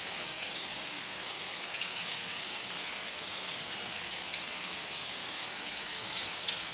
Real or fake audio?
fake